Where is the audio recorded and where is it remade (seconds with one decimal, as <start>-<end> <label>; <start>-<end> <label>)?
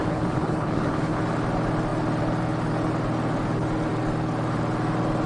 0.0-1.2 remade; 1.2-5.3 recorded